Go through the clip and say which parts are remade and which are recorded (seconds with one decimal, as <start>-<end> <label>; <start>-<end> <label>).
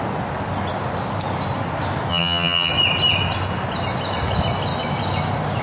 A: 0.0-2.1 recorded; 2.1-2.7 remade; 2.7-5.6 recorded